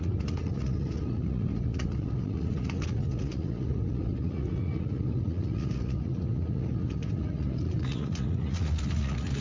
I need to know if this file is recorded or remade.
remade